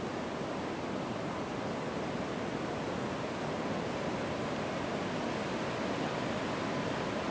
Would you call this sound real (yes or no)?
yes